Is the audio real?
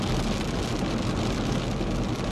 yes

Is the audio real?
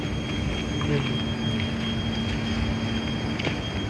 yes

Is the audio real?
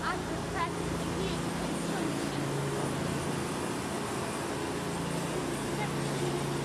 yes